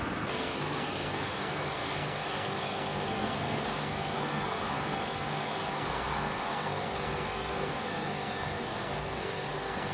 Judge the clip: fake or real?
fake